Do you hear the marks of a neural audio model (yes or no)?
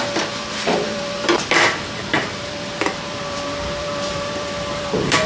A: yes